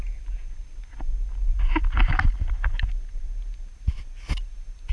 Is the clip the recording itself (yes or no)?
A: yes